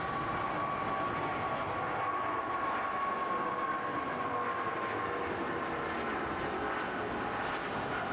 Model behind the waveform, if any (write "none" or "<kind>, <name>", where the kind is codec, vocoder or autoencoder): none